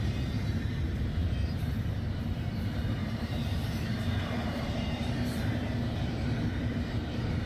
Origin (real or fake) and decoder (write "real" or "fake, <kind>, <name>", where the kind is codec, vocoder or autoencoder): fake, vocoder, BigVGAN v2